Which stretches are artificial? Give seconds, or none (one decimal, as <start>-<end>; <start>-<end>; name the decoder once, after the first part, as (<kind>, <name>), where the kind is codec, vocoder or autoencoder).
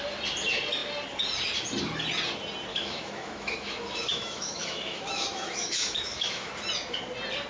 2.7-6.5 (autoencoder, DAC-VAE)